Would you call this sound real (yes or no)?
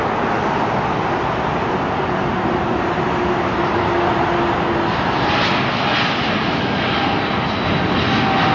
yes